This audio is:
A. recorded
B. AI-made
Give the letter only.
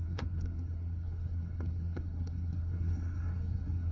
B